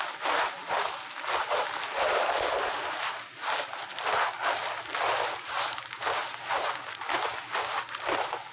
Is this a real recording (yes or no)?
yes